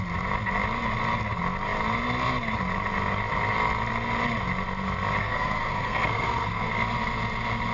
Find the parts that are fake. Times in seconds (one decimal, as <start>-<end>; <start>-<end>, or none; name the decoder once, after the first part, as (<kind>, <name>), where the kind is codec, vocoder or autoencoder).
5.2-6.7 (codec, SNAC)